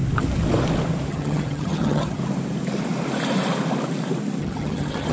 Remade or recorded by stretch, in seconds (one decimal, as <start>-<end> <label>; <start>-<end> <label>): 0.0-1.1 recorded; 1.1-2.2 remade; 2.2-4.4 recorded; 4.4-5.1 remade